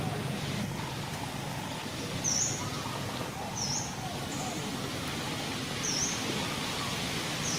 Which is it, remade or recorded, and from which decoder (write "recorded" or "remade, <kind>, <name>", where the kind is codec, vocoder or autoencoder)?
recorded